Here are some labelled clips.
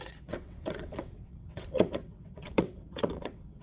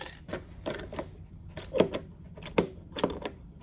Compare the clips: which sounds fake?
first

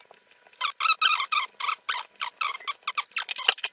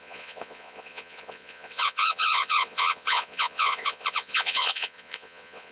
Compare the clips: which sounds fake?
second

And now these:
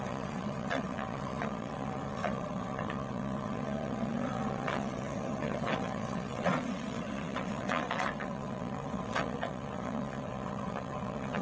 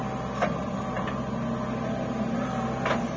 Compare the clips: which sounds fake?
first